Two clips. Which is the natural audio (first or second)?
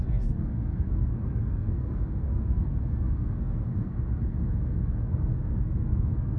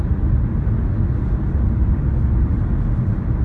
second